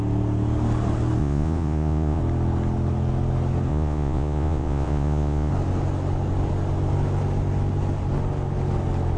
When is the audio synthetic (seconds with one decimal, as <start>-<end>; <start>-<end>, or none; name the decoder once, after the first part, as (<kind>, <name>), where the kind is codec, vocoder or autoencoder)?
1.2-2.2 (vocoder, Vocos); 3.7-5.5